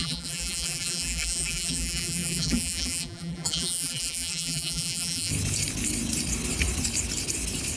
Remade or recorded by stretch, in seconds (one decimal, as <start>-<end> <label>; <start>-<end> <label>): 0.0-5.3 remade; 5.3-7.8 recorded